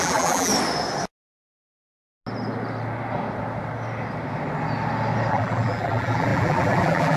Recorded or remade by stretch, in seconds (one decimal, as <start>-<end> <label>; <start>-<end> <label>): 0.0-0.5 remade; 0.5-1.5 recorded; 1.5-2.0 remade; 2.0-5.3 recorded; 5.3-7.2 remade